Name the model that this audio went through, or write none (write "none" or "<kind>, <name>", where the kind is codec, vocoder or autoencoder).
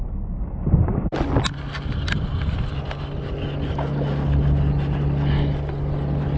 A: none